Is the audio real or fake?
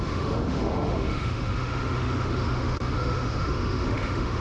fake